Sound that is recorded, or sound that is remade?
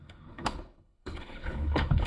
remade